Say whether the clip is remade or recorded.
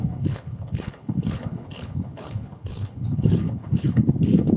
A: remade